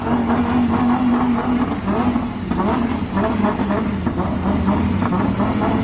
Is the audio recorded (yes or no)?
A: yes